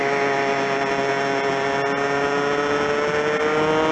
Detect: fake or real real